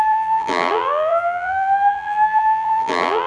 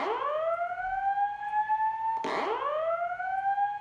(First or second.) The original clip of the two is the second